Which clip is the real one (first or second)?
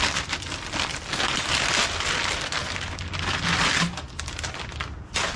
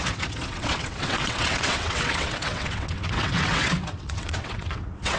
first